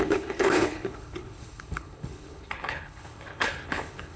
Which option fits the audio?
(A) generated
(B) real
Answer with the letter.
A